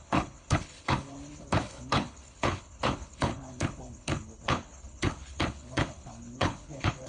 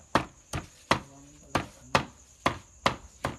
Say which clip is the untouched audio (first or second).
second